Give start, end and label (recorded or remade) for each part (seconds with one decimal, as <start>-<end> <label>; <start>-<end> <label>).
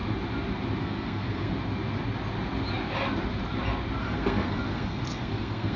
0.0-0.8 recorded; 0.8-1.5 remade; 1.5-4.0 recorded; 4.0-5.8 remade